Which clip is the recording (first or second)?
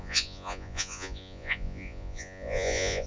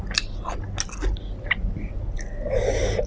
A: second